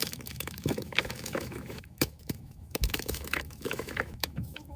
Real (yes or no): no